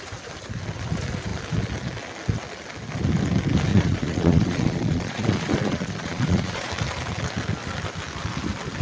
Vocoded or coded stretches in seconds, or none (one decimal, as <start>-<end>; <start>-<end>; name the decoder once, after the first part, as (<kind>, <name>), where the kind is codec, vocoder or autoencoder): 3.7-6.7 (vocoder, Vocos)